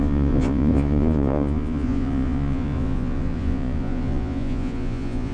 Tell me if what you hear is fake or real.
fake